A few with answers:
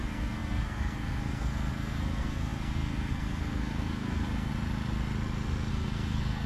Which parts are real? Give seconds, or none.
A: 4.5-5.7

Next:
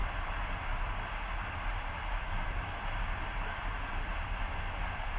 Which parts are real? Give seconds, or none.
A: 0.0-5.2

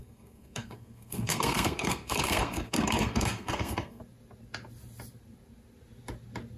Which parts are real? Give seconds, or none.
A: 4.0-6.6